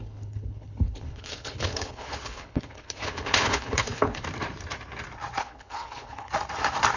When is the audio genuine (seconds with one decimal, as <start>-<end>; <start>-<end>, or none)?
4.2-5.4; 6.3-7.0